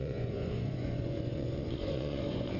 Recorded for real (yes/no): no